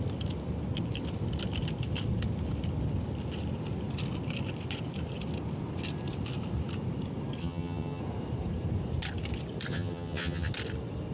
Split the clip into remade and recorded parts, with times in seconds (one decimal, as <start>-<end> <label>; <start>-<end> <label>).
0.0-7.4 recorded; 7.4-8.0 remade; 8.0-9.7 recorded; 9.7-10.5 remade; 10.5-11.1 recorded